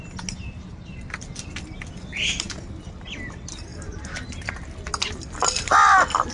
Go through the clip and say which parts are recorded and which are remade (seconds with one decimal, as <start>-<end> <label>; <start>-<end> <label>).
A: 0.0-3.7 recorded; 3.7-4.5 remade; 4.5-6.3 recorded

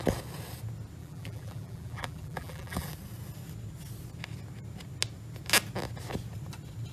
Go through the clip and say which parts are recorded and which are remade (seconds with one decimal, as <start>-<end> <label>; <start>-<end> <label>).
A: 0.0-1.0 recorded; 1.0-2.9 remade; 2.9-6.9 recorded